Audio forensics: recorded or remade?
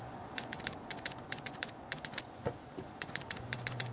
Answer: remade